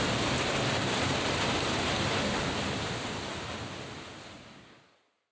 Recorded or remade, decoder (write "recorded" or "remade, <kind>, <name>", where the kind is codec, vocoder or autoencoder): recorded